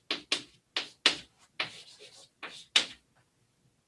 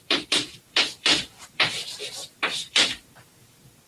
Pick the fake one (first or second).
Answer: second